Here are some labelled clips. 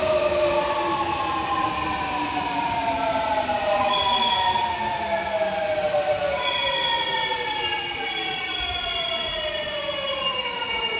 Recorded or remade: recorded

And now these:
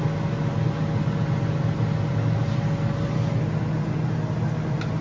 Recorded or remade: recorded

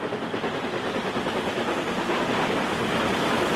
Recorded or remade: recorded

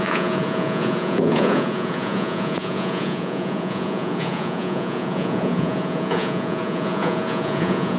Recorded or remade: remade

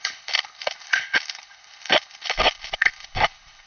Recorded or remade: remade